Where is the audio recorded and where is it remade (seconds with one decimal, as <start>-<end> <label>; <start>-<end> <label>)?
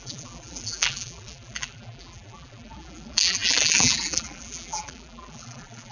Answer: 0.0-5.9 remade